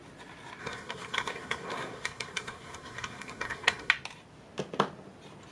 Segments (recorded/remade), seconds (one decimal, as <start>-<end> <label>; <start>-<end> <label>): 0.0-0.6 recorded; 0.6-3.9 remade; 3.9-5.5 recorded